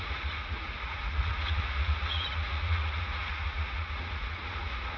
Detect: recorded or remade remade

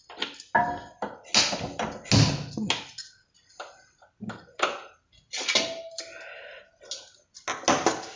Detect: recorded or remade recorded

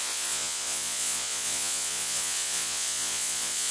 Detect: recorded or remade remade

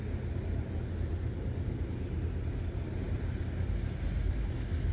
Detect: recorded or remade recorded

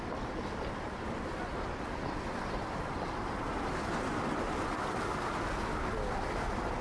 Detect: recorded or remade recorded